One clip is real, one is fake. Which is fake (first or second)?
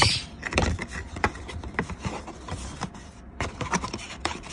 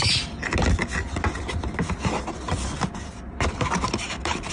first